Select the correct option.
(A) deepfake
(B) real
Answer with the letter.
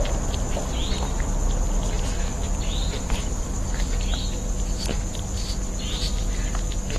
B